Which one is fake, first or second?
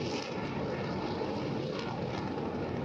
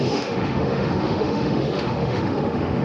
second